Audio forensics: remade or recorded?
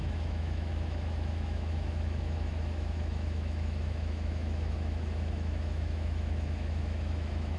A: remade